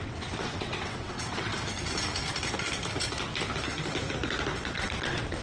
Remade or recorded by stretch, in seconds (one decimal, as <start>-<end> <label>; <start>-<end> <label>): 0.0-1.5 remade; 1.5-4.7 recorded; 4.7-5.4 remade